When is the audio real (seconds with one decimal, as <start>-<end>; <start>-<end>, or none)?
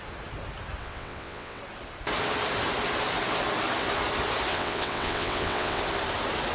0.0-0.8; 1.6-4.5; 5.8-6.5